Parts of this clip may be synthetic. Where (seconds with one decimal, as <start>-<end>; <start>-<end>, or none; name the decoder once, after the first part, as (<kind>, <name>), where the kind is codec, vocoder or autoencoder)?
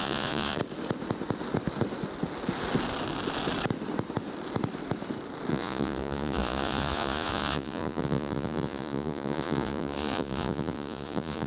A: 0.0-0.6 (vocoder, Vocos); 5.5-11.5